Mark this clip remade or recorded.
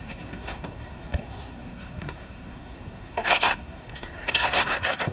remade